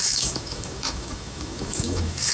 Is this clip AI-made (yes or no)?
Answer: yes